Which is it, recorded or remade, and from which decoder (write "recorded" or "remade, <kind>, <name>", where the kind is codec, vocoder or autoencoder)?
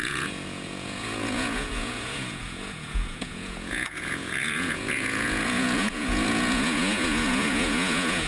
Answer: remade, vocoder, Vocos